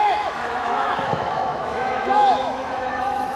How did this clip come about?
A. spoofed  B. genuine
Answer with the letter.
A